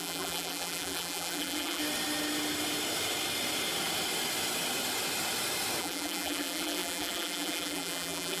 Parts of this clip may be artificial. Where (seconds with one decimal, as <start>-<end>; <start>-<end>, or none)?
0.0-1.8; 5.8-8.4